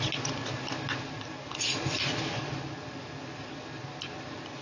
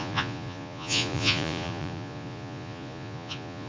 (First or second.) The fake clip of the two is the second